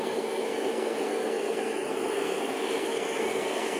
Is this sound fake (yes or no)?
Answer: yes